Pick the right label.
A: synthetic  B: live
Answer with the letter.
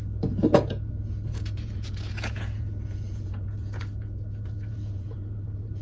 A